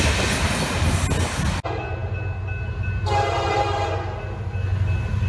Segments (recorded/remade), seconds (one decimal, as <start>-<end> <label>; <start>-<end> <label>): 0.0-5.3 recorded